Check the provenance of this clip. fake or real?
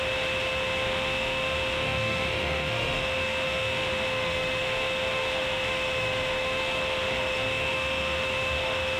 fake